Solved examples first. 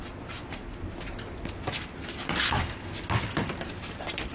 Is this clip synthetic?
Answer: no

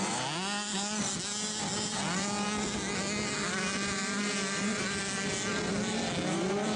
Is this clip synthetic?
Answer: no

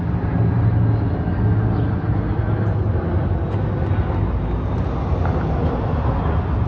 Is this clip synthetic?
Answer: no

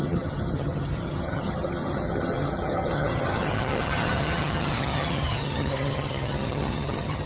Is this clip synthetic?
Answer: yes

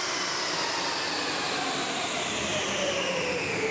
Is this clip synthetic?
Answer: no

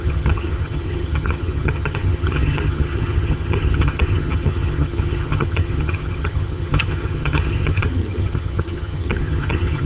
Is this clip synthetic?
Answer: yes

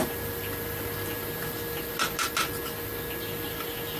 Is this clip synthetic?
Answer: no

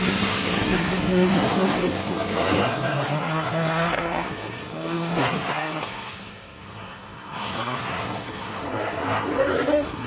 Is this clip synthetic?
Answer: yes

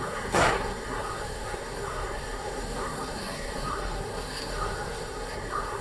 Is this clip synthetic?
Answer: yes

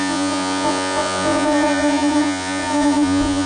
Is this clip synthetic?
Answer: yes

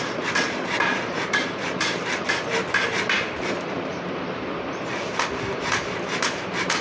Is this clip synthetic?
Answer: yes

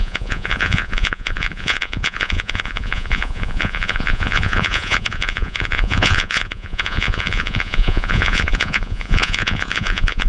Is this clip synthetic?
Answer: yes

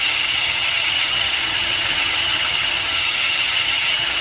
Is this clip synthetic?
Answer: yes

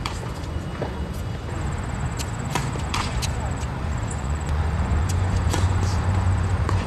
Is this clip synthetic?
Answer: yes